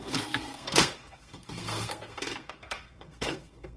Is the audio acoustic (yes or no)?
no